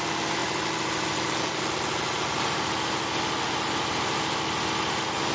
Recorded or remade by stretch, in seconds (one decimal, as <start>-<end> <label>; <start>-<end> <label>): 0.0-5.3 recorded